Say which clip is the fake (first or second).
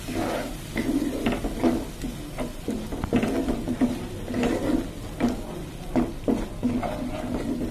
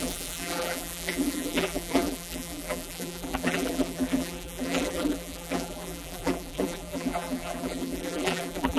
second